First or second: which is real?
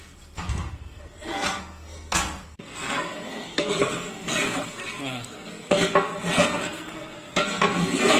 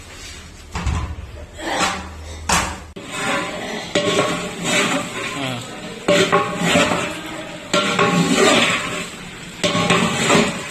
second